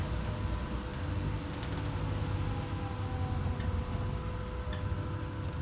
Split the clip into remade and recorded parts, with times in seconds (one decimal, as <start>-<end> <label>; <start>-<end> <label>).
0.0-5.6 recorded